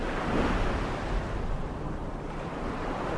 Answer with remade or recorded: remade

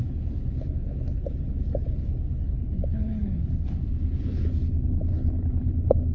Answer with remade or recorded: remade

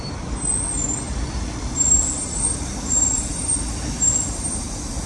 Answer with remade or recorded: recorded